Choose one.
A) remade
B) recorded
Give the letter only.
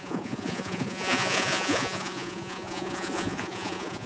A